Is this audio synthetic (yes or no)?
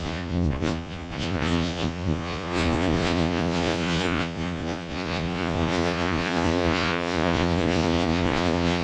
yes